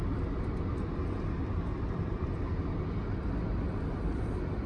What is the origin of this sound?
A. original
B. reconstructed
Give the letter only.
A